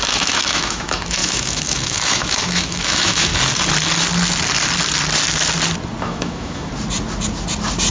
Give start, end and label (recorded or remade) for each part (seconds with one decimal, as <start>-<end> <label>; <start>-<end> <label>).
0.0-3.3 remade; 3.3-6.0 recorded; 6.0-6.7 remade; 6.7-7.9 recorded